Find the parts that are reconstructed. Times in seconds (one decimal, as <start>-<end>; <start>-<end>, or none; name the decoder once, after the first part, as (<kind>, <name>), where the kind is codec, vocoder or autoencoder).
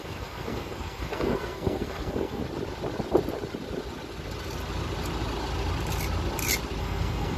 0.0-2.4 (codec, SNAC); 6.8-7.4